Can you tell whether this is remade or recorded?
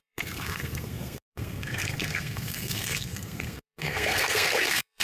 remade